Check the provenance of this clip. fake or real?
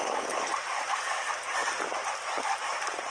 real